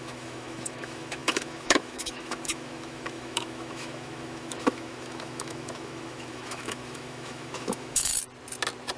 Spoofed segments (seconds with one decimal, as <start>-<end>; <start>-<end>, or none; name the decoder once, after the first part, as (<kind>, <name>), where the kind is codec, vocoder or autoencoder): 0.0-8.1 (autoencoder, DAC-VAE)